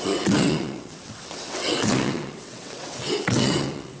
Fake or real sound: fake